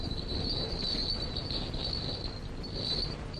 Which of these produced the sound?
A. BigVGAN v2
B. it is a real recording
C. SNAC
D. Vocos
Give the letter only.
B